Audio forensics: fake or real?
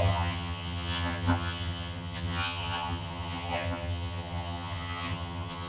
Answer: fake